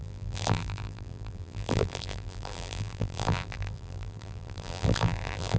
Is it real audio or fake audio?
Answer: fake